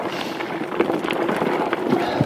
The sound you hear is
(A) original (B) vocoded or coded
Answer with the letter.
A